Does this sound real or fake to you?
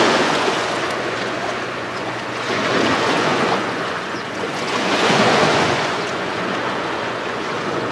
fake